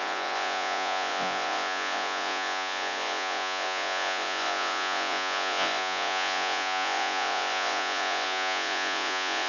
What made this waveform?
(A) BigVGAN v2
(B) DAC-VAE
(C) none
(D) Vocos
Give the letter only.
D